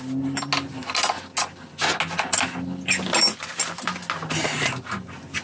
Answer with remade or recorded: recorded